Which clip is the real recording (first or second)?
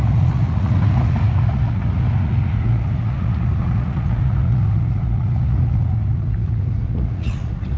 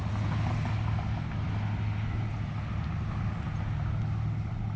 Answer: second